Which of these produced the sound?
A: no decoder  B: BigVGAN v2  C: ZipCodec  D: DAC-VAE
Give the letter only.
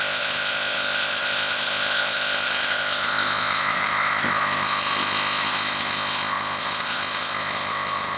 C